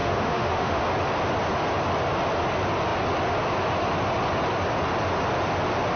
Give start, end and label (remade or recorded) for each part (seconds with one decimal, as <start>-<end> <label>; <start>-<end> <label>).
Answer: 0.0-0.8 remade; 0.8-6.0 recorded